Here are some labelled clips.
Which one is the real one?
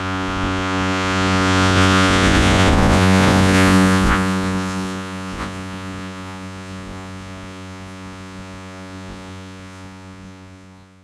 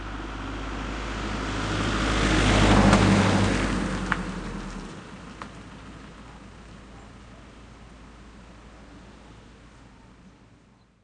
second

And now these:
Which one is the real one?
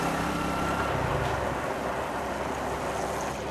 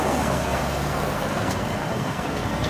first